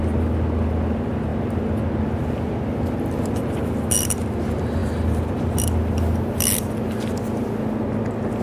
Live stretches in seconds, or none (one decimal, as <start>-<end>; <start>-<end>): 0.0-8.4

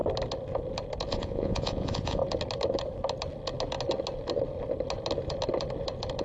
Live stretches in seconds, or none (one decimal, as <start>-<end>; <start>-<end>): 0.0-1.1; 2.2-6.2

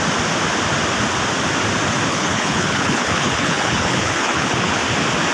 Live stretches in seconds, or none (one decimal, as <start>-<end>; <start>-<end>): 0.0-2.1; 4.8-5.3